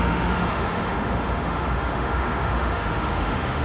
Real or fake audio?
fake